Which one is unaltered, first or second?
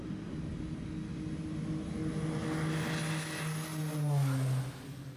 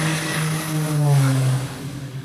first